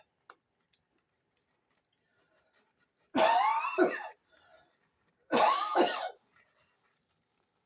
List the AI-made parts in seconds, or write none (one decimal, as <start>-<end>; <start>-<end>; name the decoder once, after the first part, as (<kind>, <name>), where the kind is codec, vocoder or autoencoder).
2.1-6.7 (vocoder, BigVGAN v2)